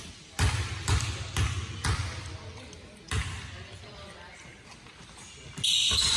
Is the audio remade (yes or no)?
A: no